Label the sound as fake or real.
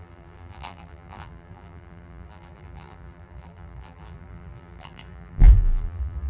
fake